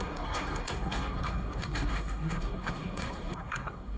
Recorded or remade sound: remade